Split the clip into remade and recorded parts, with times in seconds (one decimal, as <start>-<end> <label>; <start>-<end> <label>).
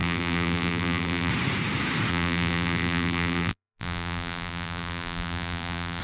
0.0-1.3 remade; 1.3-2.1 recorded; 2.1-6.0 remade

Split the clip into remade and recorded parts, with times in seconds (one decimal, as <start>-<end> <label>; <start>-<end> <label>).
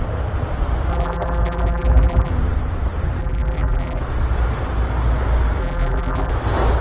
0.0-0.9 recorded; 0.9-2.3 remade; 2.3-3.2 recorded; 3.2-4.0 remade; 4.0-5.6 recorded; 5.6-6.3 remade; 6.3-6.8 recorded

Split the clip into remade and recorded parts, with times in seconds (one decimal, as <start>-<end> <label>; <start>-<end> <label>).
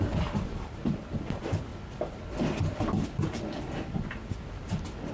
0.0-1.7 remade; 1.7-5.1 recorded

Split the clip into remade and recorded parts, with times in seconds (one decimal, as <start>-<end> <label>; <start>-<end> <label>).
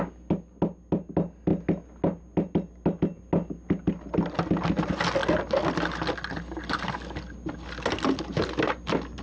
0.0-9.2 recorded